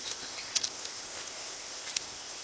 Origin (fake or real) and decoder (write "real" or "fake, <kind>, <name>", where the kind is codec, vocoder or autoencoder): fake, codec, ZipCodec